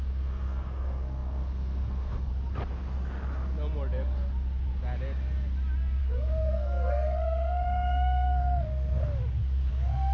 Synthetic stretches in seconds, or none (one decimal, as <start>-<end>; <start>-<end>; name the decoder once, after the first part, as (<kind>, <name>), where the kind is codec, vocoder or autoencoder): 0.0-2.3 (codec, SNAC); 6.0-9.0; 9.7-10.1